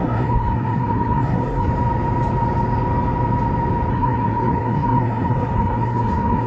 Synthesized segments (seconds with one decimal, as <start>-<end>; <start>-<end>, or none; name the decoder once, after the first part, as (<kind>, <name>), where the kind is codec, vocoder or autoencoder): 0.0-1.7 (codec, SNAC); 3.9-6.5